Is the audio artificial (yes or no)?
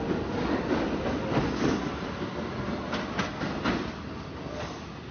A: no